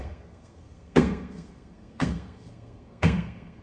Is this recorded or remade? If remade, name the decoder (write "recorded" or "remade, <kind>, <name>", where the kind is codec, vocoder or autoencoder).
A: remade, codec, SNAC